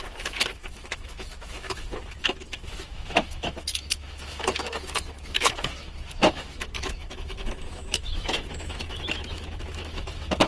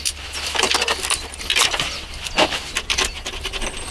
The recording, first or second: second